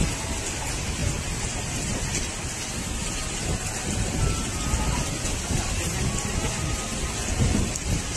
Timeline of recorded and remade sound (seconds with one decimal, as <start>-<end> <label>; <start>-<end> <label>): 0.0-8.2 recorded